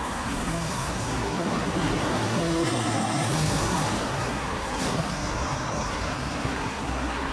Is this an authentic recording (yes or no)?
no